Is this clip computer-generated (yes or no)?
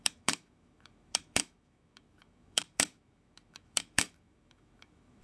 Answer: yes